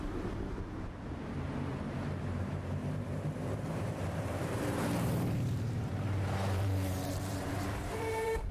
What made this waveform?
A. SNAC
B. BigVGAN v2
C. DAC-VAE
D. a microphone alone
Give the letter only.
B